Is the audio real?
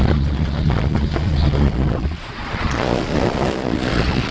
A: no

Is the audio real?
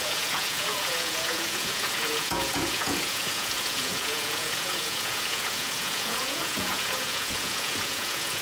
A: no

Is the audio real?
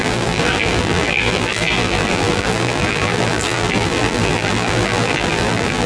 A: no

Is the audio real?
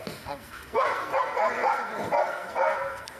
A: no